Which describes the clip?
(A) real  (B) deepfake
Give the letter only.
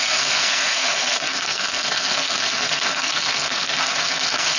B